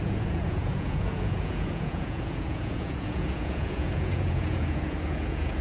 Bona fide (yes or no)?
no